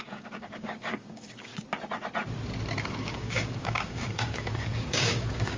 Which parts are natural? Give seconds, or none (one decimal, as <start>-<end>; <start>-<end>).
1.5-2.8